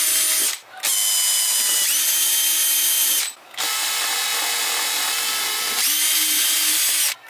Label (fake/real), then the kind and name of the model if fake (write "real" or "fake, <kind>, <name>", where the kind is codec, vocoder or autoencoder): real